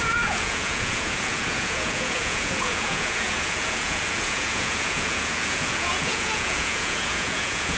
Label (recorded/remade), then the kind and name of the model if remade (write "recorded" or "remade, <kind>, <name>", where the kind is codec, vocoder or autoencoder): remade, vocoder, Vocos